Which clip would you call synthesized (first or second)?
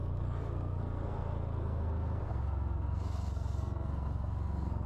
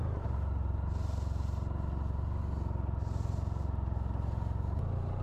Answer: first